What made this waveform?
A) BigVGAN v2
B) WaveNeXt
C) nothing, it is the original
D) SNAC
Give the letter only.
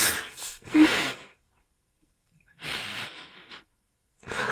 D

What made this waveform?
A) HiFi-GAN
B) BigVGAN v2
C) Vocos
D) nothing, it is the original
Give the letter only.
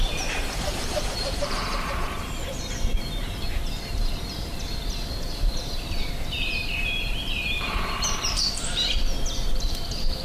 B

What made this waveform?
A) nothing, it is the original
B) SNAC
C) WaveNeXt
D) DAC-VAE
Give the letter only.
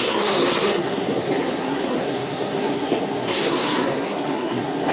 B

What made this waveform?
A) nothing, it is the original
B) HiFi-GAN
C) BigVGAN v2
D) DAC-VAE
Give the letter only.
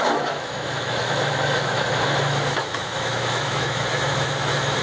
D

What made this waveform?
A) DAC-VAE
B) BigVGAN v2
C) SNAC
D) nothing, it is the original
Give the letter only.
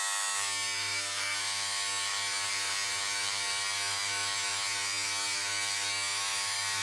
A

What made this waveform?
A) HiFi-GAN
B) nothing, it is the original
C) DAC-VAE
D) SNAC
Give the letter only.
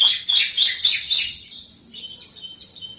B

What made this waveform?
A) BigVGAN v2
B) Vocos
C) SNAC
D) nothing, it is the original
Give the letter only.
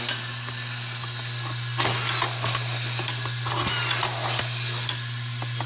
D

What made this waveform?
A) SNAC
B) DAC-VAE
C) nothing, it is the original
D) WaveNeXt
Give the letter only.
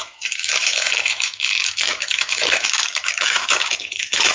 B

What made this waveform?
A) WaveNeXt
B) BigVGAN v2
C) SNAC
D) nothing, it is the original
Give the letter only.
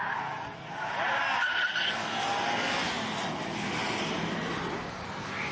D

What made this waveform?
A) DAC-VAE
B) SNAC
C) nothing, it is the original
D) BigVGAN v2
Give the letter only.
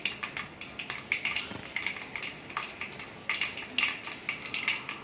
C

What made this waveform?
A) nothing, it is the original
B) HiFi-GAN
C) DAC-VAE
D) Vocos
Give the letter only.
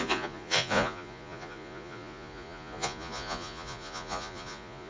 D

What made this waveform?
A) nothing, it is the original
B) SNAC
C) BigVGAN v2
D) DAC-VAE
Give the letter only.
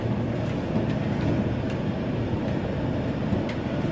C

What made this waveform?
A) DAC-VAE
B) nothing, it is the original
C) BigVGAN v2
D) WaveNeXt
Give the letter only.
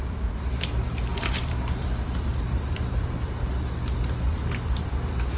C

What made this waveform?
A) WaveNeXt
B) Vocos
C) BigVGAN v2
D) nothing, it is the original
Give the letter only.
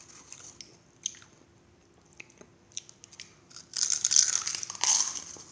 D